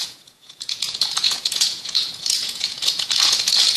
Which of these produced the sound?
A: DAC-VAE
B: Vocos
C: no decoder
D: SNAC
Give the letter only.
B